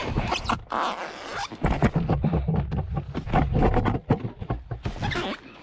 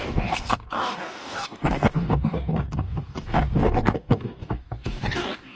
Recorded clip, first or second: first